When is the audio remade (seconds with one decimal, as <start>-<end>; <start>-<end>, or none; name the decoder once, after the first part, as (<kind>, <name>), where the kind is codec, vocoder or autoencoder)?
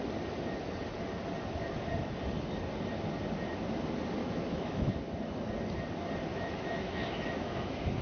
4.2-4.9 (autoencoder, DAC-VAE); 6.3-8.0